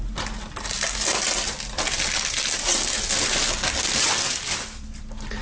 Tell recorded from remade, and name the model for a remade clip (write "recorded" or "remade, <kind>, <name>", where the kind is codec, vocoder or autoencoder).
recorded